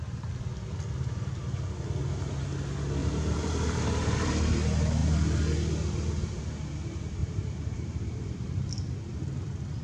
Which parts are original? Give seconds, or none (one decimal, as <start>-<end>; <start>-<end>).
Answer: 0.0-3.0; 4.3-7.2; 8.5-9.8